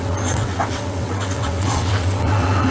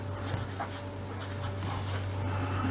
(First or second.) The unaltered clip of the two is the second